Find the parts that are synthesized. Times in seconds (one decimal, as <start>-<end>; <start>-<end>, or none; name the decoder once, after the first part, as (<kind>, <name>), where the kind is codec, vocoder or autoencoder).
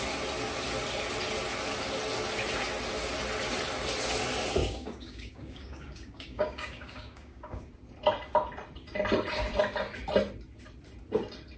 4.6-7.7 (codec, DAC)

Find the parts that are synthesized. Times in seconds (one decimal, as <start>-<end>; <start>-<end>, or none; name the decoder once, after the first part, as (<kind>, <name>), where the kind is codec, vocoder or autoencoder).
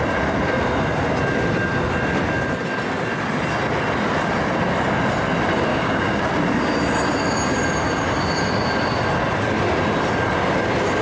5.7-6.2 (codec, DAC)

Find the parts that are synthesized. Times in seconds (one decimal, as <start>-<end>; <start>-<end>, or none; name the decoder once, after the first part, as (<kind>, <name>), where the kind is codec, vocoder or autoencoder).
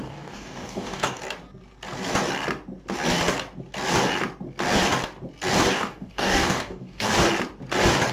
0.0-1.2 (codec, DAC); 5.7-7.1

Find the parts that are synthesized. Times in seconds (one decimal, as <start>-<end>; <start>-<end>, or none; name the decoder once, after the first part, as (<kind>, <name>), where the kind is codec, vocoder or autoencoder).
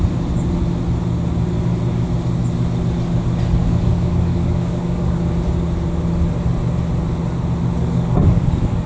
3.6-5.2 (codec, DAC); 7.8-8.9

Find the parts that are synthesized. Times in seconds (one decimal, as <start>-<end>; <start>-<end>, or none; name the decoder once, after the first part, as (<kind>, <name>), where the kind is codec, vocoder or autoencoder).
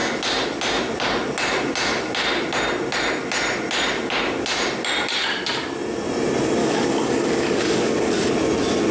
6.6-8.3 (codec, DAC)